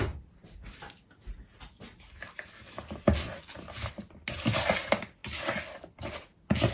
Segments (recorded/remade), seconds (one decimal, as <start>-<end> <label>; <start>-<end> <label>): 0.0-6.7 recorded